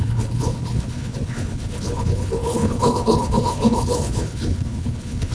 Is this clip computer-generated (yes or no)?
yes